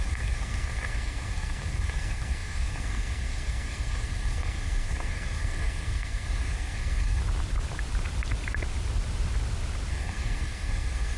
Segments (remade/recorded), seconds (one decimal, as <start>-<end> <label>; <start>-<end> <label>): 0.0-7.2 remade; 7.2-9.9 recorded; 9.9-11.2 remade